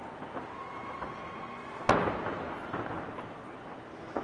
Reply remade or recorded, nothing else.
recorded